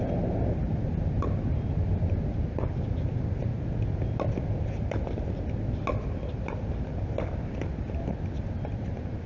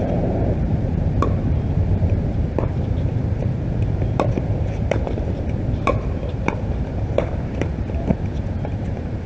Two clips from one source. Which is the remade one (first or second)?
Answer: second